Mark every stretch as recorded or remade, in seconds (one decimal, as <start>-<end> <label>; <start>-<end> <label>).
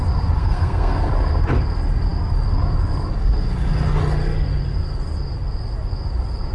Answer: 0.0-0.4 recorded; 0.4-1.1 remade; 1.1-6.5 recorded